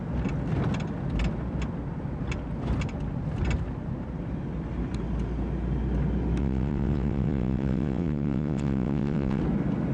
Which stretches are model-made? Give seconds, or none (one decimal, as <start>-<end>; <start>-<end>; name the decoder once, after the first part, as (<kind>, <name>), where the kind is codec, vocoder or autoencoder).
6.4-9.4 (vocoder, WaveNeXt)